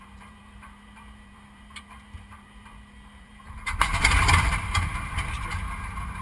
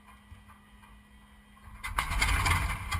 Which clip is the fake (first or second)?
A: first